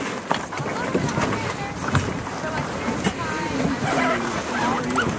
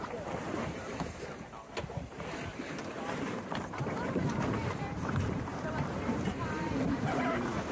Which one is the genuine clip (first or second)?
first